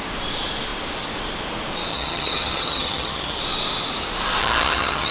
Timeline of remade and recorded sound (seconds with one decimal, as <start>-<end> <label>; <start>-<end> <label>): 0.0-1.9 recorded; 1.9-3.4 remade; 3.4-4.4 recorded; 4.4-5.1 remade